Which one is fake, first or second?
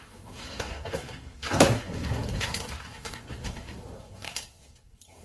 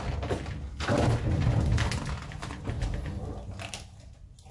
first